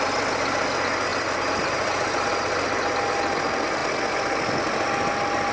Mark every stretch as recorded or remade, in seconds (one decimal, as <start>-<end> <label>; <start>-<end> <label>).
0.0-1.1 recorded; 1.1-2.3 remade; 2.3-5.5 recorded